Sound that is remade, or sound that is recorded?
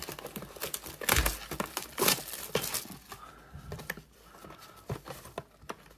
recorded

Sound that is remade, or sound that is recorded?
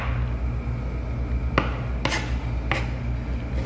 recorded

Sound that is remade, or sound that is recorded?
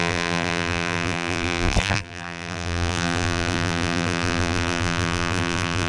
remade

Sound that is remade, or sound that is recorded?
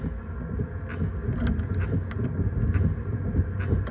recorded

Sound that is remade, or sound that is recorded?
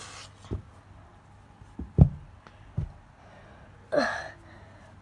recorded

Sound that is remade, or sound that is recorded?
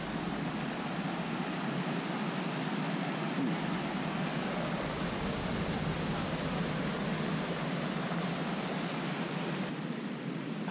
recorded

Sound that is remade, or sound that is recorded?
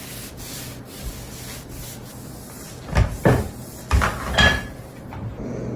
recorded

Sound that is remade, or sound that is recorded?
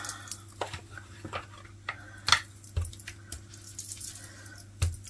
recorded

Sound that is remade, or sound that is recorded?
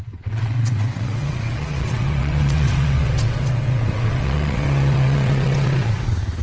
remade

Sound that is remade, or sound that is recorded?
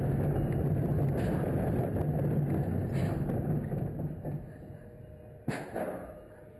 recorded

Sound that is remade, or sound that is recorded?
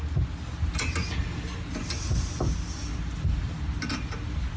recorded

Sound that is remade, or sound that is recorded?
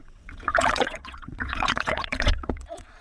remade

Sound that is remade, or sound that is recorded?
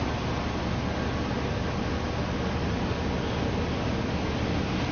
recorded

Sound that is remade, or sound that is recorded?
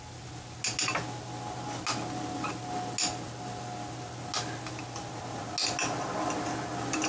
recorded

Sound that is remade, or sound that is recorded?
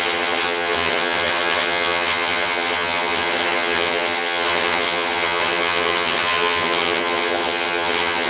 remade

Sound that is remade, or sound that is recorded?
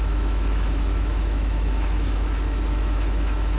remade